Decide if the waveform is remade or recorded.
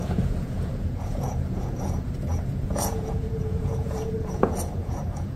remade